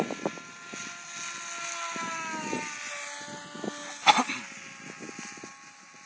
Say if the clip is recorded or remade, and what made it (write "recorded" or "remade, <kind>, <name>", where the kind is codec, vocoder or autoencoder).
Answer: recorded